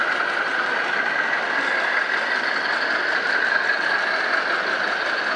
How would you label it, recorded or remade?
recorded